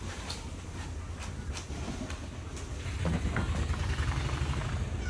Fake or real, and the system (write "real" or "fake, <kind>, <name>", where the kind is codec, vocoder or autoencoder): real